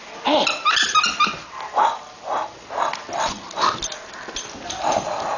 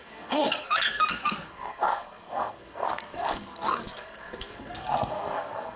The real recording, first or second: first